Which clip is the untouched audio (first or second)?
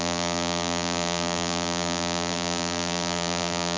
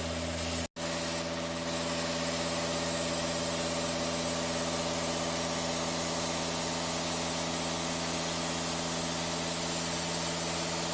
second